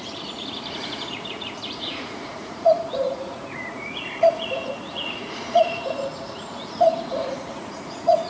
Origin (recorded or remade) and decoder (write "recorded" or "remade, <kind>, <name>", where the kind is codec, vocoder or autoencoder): remade, vocoder, Vocos